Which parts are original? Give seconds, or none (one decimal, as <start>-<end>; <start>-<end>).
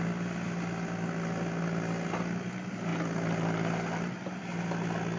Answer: 0.0-5.2